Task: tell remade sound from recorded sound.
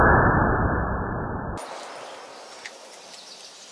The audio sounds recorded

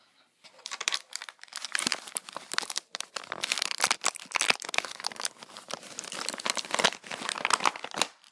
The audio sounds remade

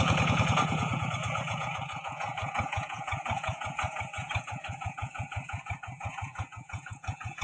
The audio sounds remade